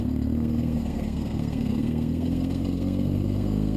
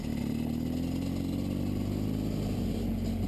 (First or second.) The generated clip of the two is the first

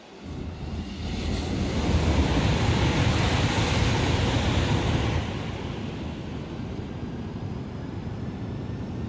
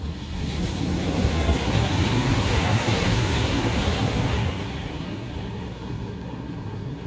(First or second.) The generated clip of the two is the second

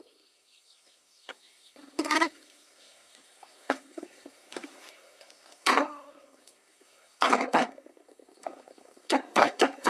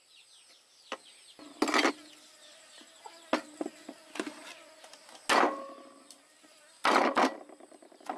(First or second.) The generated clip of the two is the first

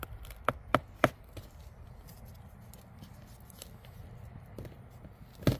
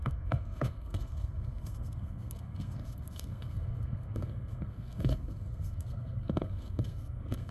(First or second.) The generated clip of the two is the second